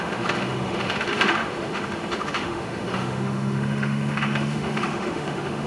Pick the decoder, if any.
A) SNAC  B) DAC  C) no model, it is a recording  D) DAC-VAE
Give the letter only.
D